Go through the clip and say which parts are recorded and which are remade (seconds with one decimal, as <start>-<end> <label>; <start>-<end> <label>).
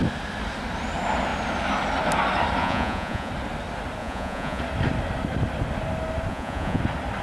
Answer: 0.0-2.6 recorded; 2.6-3.3 remade; 3.3-4.0 recorded; 4.0-4.6 remade; 4.6-6.3 recorded; 6.3-6.8 remade; 6.8-7.2 recorded